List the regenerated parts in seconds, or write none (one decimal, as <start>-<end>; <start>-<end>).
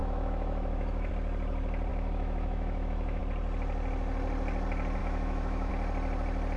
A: 0.0-1.1; 1.9-3.2; 5.0-5.7